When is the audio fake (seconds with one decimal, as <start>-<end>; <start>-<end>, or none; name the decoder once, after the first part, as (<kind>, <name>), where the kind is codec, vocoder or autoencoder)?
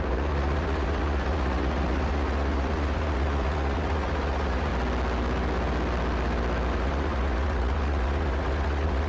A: 0.0-4.7 (vocoder, Vocos); 6.7-9.1